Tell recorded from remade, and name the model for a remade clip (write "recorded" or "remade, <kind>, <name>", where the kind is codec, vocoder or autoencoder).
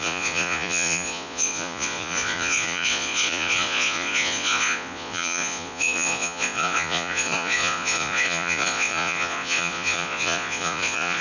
remade, vocoder, Vocos